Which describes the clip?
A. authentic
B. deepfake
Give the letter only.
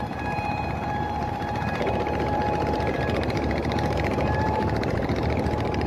B